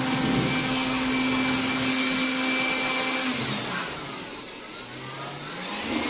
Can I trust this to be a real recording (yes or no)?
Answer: yes